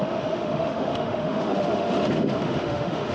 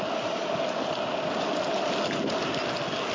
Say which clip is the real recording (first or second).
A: second